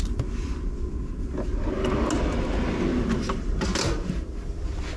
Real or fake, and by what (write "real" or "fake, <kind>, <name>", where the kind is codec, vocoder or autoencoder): real